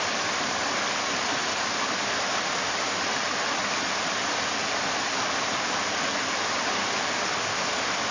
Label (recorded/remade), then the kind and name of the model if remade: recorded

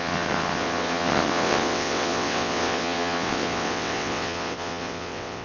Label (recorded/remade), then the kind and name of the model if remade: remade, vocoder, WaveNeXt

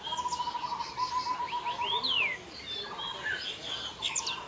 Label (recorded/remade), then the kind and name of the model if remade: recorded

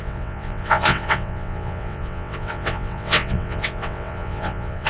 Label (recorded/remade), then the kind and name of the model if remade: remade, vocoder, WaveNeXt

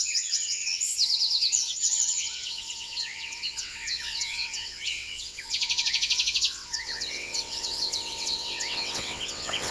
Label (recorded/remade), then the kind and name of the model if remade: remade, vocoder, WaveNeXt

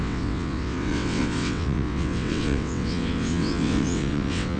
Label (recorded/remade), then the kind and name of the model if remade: remade, vocoder, WaveNeXt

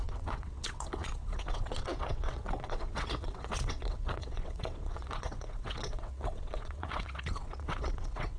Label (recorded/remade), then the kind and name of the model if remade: remade, vocoder, WaveNeXt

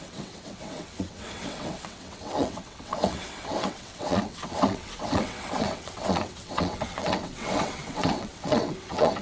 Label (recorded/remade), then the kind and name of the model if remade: remade, vocoder, WaveNeXt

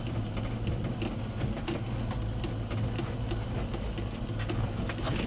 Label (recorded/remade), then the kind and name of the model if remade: recorded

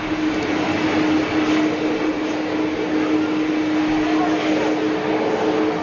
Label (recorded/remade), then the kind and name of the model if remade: recorded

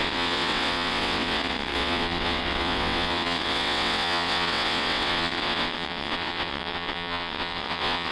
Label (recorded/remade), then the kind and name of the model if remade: remade, vocoder, WaveNeXt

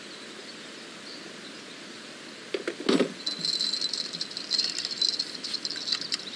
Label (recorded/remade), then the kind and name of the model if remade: recorded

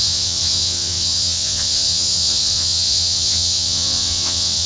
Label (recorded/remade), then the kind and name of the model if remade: remade, vocoder, WaveNeXt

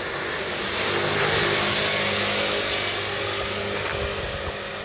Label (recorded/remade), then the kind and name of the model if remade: recorded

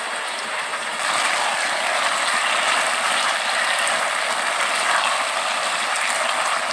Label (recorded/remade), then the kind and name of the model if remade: recorded